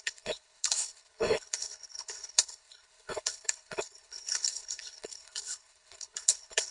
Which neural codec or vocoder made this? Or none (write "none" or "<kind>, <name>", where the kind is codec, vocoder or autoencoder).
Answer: codec, HILCodec